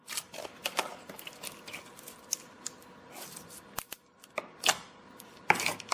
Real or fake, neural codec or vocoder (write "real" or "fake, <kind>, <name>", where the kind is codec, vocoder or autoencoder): real